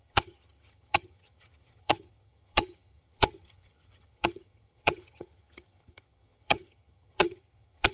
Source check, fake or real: fake